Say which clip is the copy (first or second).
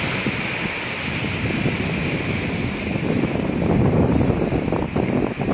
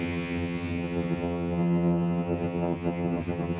second